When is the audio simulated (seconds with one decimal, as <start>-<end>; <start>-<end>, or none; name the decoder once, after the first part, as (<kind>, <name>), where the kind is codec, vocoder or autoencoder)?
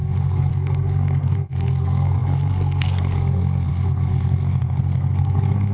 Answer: 0.0-5.7 (codec, SNAC)